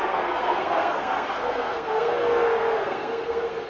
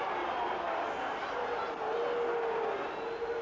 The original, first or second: second